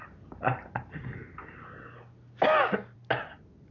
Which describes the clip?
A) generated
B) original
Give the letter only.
B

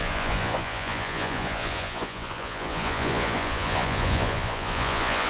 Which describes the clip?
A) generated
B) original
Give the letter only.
A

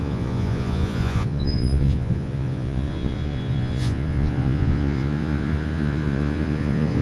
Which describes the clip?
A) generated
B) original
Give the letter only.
A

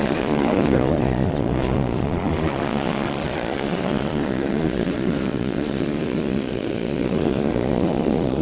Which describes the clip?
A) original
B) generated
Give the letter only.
B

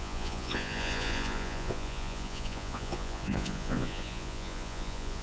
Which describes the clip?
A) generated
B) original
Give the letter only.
A